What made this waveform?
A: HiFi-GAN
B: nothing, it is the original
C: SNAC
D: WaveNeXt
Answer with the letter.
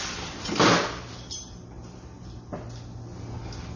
B